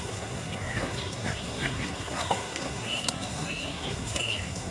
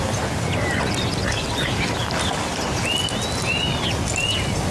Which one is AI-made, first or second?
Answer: first